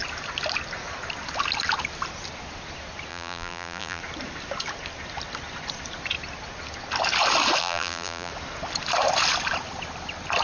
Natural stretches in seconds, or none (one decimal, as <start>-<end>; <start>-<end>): 0.0-3.1; 4.0-7.6; 8.3-10.4